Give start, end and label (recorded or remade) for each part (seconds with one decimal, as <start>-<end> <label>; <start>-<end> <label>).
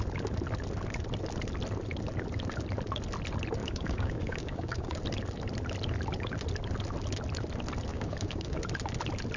0.0-3.6 recorded; 3.6-5.0 remade; 5.0-7.9 recorded; 7.9-8.6 remade; 8.6-9.4 recorded